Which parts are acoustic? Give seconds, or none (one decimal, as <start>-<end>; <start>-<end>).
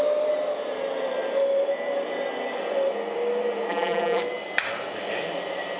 0.0-3.7; 4.2-5.8